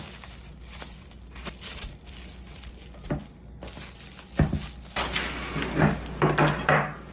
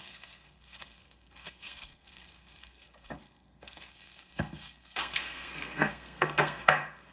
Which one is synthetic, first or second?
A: second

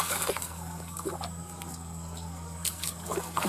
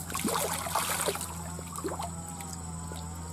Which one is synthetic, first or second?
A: first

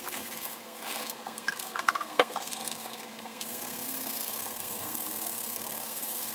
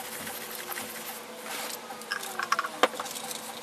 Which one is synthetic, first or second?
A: first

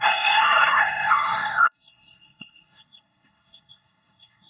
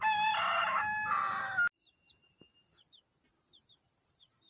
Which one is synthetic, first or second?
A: first